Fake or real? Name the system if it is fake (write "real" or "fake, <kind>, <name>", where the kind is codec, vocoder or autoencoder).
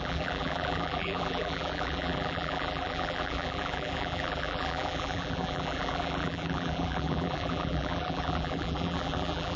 fake, vocoder, BigVGAN v2